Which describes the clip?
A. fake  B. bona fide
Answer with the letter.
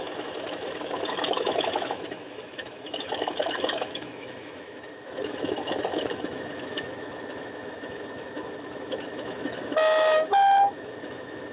A